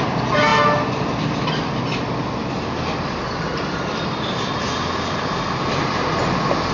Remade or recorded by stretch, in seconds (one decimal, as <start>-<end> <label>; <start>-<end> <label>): 0.0-6.7 recorded